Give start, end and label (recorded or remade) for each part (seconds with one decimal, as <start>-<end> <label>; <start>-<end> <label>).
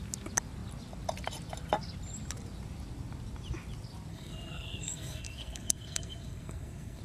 0.0-4.1 recorded; 4.1-7.0 remade